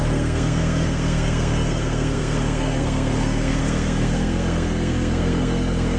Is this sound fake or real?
fake